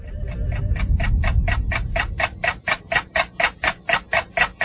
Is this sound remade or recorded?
recorded